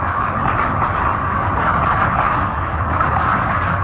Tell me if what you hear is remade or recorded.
remade